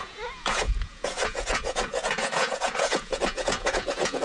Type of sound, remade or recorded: remade